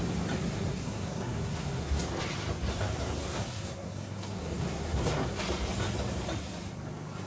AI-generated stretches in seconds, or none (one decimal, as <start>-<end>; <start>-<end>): 0.4-2.0; 3.2-5.4